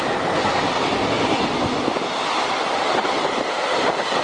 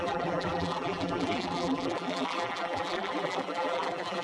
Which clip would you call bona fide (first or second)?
first